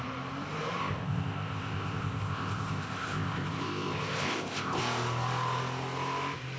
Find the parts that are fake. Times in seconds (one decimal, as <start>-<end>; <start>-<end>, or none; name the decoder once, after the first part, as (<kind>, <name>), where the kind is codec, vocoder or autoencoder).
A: 0.8-4.8 (codec, ZipCodec)